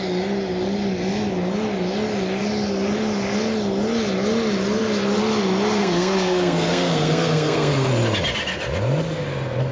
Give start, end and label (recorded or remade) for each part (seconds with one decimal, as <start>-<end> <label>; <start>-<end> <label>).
0.0-5.8 recorded; 5.8-7.9 remade; 7.9-9.7 recorded